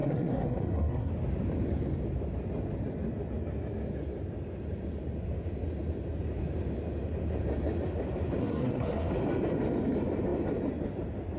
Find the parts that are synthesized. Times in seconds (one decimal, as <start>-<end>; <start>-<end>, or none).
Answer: 0.0-1.1; 8.4-9.1